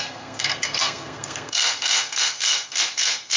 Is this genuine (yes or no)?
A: no